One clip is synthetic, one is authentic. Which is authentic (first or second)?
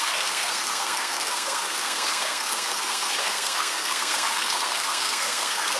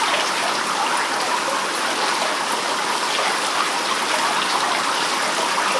second